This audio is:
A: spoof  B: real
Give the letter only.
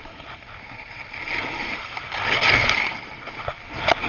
B